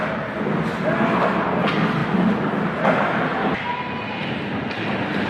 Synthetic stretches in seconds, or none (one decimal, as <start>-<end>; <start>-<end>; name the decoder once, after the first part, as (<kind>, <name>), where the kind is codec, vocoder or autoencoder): none